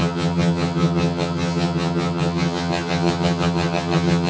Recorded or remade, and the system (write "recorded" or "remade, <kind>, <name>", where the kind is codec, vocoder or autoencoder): remade, vocoder, HiFi-GAN